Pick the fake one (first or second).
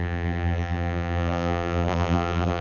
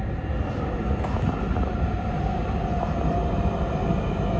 first